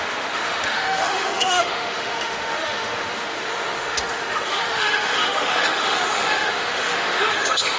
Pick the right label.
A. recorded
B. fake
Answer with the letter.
B